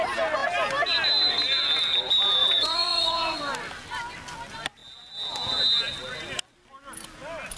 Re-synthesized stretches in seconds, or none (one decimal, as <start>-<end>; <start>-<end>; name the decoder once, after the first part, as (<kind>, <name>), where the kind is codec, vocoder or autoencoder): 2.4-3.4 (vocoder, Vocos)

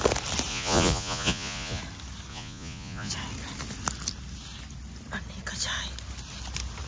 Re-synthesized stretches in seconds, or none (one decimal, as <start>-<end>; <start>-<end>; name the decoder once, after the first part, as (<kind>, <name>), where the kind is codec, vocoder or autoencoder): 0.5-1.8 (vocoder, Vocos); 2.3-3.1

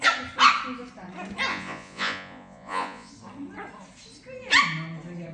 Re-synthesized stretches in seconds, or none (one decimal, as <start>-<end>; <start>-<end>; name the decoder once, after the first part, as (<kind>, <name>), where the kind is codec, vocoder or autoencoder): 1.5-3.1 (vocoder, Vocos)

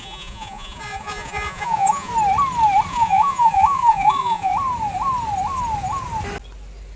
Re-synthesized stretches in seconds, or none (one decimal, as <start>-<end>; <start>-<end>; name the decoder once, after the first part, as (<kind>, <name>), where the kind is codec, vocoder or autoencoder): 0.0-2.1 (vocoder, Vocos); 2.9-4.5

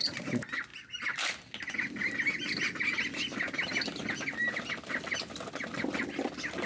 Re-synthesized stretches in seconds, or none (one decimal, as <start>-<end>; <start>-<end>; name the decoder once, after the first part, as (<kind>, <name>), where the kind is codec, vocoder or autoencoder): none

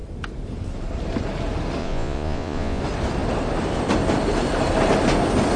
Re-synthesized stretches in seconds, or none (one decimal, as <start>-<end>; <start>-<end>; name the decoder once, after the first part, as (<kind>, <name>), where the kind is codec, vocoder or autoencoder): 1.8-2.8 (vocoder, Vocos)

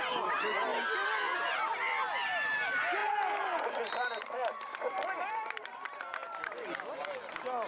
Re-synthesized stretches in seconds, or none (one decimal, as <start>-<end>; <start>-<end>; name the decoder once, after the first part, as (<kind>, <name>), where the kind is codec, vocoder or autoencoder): none

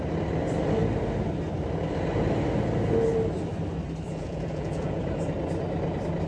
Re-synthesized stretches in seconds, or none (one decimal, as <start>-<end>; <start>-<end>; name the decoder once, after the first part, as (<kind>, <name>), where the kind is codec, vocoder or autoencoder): 4.1-5.0 (vocoder, Vocos)